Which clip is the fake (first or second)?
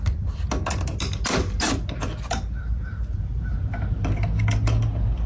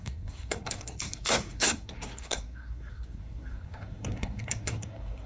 second